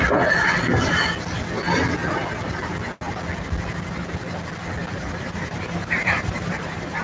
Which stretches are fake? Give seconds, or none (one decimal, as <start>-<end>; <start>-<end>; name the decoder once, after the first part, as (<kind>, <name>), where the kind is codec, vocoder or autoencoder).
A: 4.8-7.0 (vocoder, BigVGAN v2)